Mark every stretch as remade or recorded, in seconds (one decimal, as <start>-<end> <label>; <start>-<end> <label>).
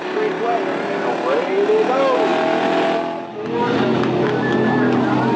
0.0-5.4 recorded